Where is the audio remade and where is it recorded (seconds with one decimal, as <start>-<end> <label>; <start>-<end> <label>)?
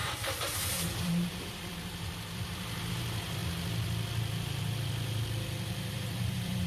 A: 0.0-3.4 remade; 3.4-5.9 recorded; 5.9-6.7 remade